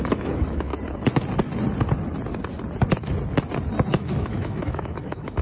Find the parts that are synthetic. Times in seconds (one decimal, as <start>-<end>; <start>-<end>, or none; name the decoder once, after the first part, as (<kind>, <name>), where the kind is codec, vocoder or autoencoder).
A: 0.0-0.7 (autoencoder, DAC-VAE); 3.9-5.4